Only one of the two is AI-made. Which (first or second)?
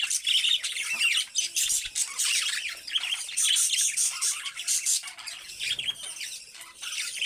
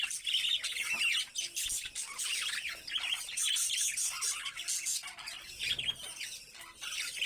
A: first